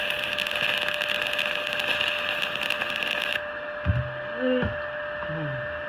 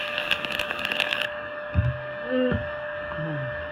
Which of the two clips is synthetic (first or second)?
second